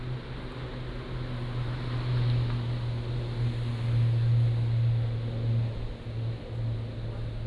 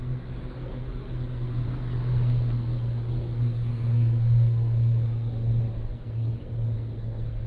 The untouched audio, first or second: first